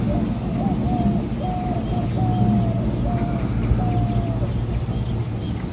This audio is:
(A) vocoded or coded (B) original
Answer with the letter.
B